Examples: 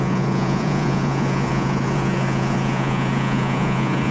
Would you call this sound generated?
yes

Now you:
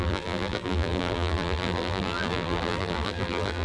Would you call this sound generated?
yes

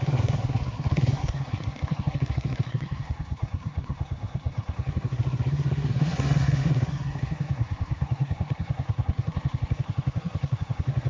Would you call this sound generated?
yes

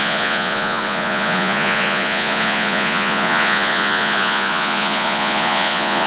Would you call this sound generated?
yes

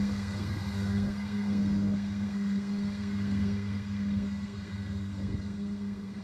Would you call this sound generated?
yes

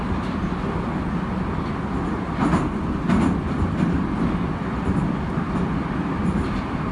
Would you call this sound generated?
no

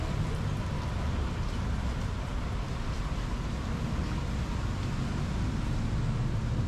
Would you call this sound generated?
no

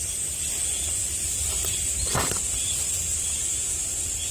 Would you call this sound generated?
no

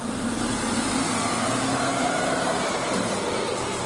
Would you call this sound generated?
no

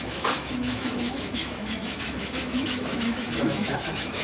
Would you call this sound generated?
yes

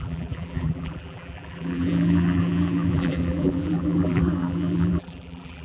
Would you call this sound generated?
yes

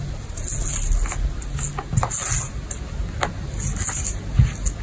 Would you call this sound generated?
no